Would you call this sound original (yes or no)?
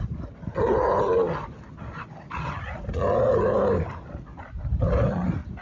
yes